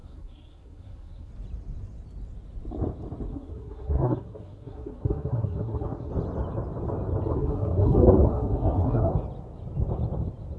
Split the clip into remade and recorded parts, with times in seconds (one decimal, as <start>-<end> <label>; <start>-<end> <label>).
0.0-1.3 remade; 1.3-3.3 recorded; 3.3-6.1 remade; 6.1-7.3 recorded; 7.3-9.1 remade; 9.1-10.6 recorded